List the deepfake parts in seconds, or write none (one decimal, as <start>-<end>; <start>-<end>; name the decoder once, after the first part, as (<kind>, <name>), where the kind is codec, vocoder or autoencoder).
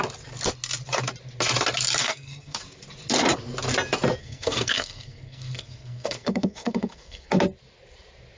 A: 2.0-2.6 (codec, SNAC); 4.2-7.3